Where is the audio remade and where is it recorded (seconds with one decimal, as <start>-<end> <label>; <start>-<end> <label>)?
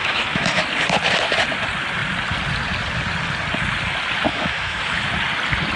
0.0-0.6 remade; 0.6-4.3 recorded; 4.3-4.8 remade; 4.8-5.8 recorded